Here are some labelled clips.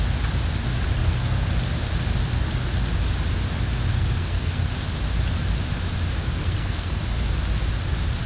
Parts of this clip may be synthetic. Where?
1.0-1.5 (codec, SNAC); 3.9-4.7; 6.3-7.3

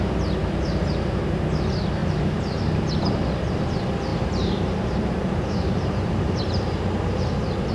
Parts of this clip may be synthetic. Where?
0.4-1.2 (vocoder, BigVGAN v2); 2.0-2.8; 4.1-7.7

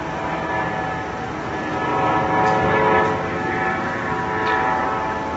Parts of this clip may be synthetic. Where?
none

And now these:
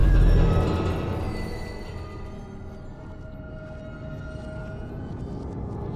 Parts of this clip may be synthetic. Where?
4.6-5.2 (vocoder, Vocos)

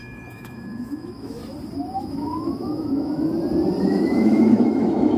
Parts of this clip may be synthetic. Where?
0.0-1.4 (autoencoder, DAC-VAE); 2.0-3.3; 3.8-5.2

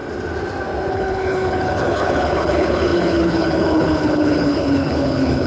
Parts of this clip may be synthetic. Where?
0.9-5.5 (codec, HILCodec)